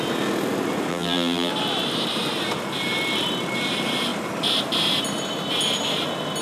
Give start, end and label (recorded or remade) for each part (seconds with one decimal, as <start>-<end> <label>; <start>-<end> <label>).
0.0-0.9 recorded; 0.9-1.5 remade; 1.5-6.4 recorded